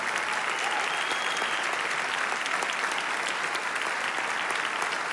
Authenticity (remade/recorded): recorded